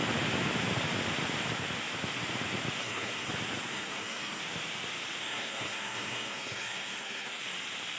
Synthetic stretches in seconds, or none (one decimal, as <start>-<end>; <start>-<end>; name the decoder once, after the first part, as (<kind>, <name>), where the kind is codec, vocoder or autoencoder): 2.8-3.3 (codec, SNAC); 3.7-4.4; 5.2-7.4